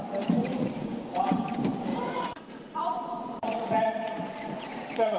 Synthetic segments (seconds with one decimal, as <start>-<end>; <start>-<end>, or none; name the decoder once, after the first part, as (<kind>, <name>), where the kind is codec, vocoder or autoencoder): 0.4-1.4 (vocoder, Vocos); 1.9-5.2